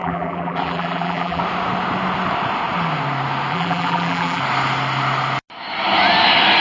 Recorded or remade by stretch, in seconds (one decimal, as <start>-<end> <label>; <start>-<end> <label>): 0.0-1.4 remade; 1.4-3.5 recorded; 3.5-4.4 remade; 4.4-6.6 recorded